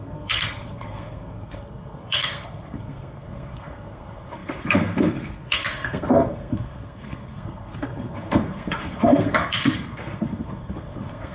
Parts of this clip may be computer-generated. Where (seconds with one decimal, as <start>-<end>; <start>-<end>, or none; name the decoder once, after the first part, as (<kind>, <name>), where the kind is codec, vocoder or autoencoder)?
0.0-11.3 (codec, SNAC)